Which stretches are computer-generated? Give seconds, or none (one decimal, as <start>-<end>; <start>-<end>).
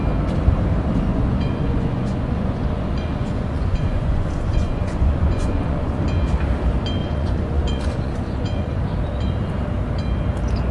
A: 1.1-6.0; 7.0-8.8